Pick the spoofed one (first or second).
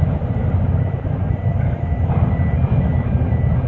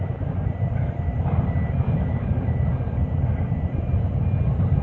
second